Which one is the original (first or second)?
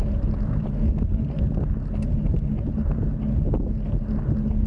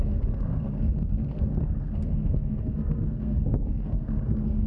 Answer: first